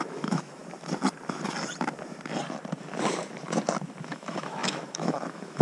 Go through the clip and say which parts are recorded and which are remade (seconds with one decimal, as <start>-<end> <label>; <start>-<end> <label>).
0.0-0.6 remade; 0.6-4.0 recorded; 4.0-5.6 remade